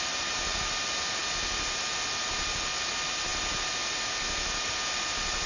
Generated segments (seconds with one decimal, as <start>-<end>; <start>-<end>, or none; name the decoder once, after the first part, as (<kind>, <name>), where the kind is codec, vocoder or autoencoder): none